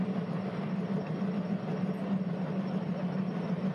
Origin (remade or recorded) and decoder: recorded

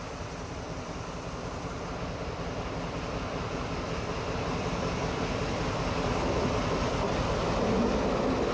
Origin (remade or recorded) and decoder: recorded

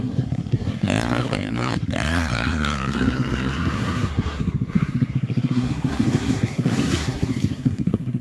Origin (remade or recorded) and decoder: remade, codec, SNAC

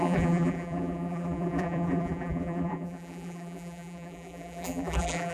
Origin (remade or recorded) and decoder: remade, vocoder, BigVGAN v2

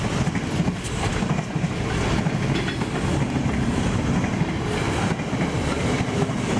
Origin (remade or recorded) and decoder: recorded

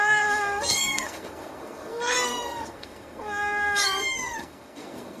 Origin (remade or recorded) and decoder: remade, codec, SNAC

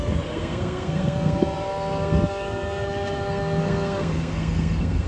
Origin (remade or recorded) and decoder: remade, codec, SNAC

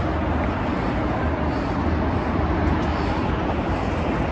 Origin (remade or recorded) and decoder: recorded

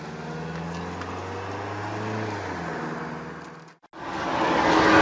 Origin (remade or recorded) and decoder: recorded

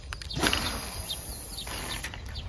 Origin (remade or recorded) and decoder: recorded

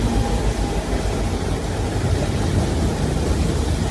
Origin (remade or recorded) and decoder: recorded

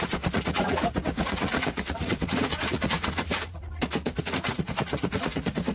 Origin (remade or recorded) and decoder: remade, vocoder, Vocos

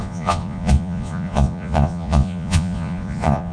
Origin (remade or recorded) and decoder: remade, vocoder, Vocos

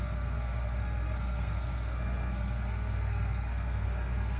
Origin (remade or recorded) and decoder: remade, codec, SNAC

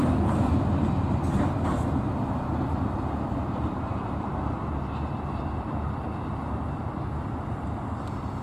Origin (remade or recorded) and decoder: recorded